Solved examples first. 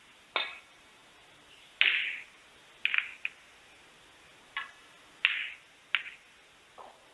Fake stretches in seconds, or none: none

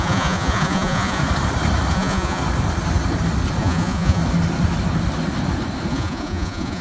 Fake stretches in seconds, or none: 0.0-1.2; 1.9-2.4; 3.6-4.2; 5.9-6.8

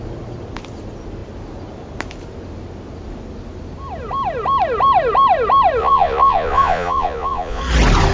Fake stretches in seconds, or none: 5.8-7.6

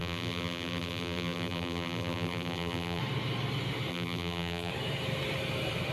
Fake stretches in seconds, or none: 0.0-3.0; 3.9-4.7

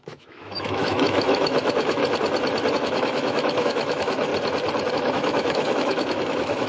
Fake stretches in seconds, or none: 0.0-2.0; 2.7-4.3; 4.9-6.7

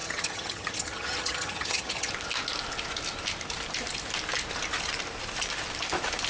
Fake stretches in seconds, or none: 0.0-2.1

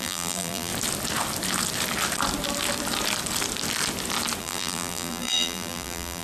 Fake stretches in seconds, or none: 0.0-0.7; 4.4-6.2